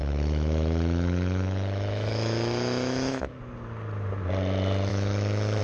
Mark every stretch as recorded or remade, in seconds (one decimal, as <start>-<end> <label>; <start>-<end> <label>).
0.0-3.4 remade; 3.4-4.9 recorded; 4.9-5.6 remade